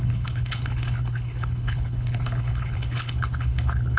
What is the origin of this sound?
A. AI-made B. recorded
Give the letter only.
A